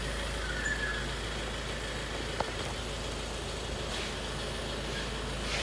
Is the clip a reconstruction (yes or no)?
no